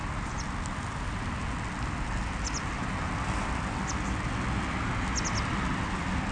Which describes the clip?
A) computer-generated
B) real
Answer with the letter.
B